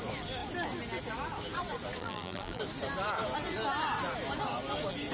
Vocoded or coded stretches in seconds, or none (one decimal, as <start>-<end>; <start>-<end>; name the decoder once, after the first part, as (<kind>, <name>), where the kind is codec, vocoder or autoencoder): 2.0-2.6 (vocoder, BigVGAN v2)